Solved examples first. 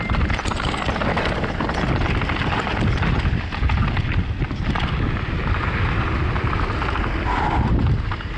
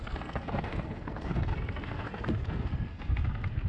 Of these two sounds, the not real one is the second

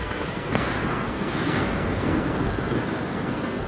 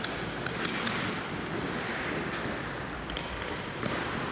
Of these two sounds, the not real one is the first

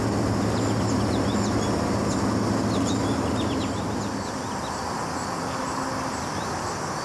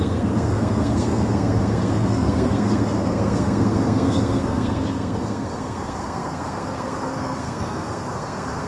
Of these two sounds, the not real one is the second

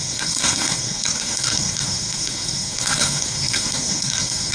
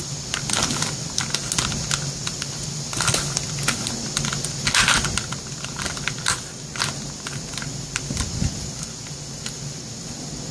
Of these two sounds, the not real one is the first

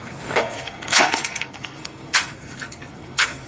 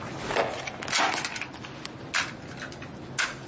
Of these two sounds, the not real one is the first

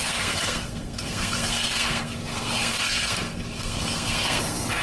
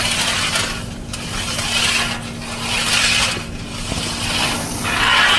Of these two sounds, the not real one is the first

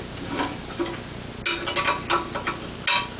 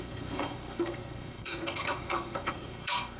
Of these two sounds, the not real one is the second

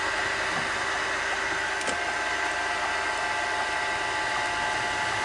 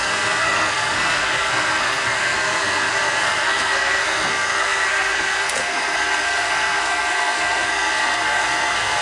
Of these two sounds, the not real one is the second